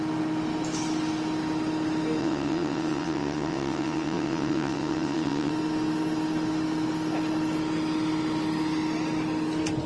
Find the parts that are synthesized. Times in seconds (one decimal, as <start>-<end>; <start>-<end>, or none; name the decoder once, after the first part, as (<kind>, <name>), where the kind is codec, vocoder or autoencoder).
2.2-5.5 (vocoder, WaveNeXt)